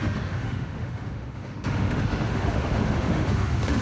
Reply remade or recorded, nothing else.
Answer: remade